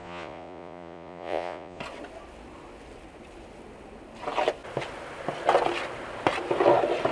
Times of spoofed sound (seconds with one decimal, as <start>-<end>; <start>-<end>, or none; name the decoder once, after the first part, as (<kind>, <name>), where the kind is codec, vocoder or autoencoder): 0.0-1.8 (vocoder, Vocos)